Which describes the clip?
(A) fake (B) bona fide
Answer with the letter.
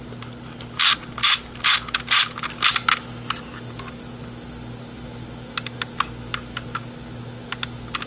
B